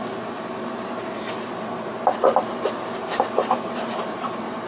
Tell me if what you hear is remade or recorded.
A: recorded